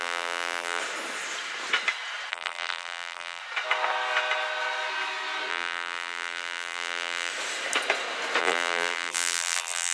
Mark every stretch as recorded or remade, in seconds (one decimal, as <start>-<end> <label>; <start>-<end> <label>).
0.0-0.8 remade; 0.8-2.3 recorded; 2.3-3.4 remade; 3.4-5.5 recorded; 5.5-7.3 remade; 7.3-8.4 recorded; 8.4-9.9 remade